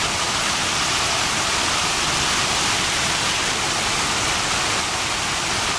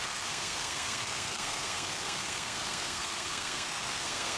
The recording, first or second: first